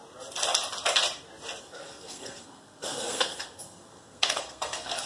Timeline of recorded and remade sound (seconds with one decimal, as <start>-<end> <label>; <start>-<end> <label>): 0.0-1.6 recorded; 1.6-5.1 remade